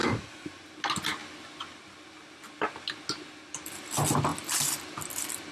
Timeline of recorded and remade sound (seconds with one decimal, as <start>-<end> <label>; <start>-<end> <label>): 0.0-0.5 remade; 0.5-5.5 recorded